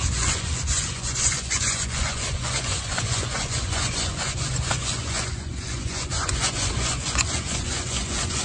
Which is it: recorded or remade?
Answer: remade